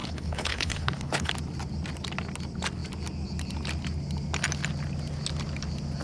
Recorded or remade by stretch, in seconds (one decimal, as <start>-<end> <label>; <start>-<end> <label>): 0.0-1.3 remade; 1.3-6.0 recorded